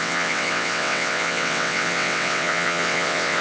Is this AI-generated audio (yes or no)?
yes